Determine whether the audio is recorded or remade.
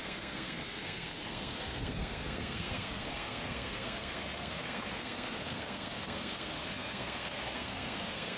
remade